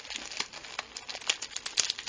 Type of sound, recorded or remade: recorded